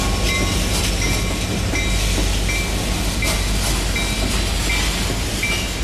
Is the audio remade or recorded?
recorded